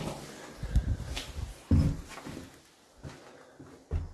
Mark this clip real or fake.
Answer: real